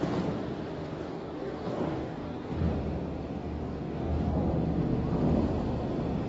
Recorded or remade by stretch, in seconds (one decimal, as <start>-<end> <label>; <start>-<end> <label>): 0.0-1.1 recorded; 1.1-2.7 remade; 2.7-3.4 recorded; 3.4-4.4 remade; 4.4-6.3 recorded